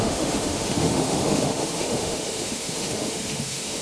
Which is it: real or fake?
fake